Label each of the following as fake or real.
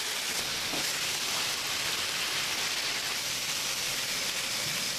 real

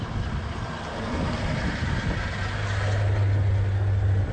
real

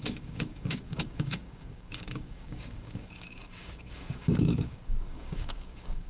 fake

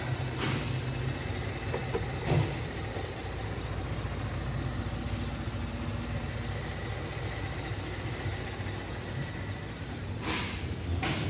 real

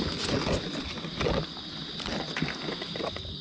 real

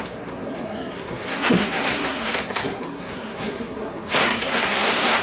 fake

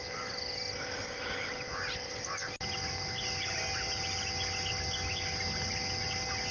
real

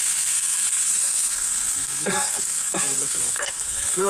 fake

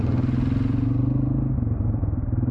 real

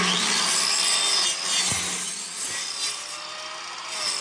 real